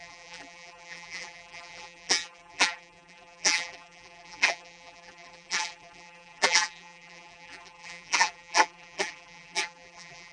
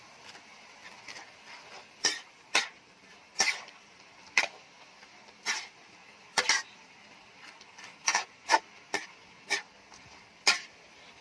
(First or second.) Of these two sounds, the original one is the second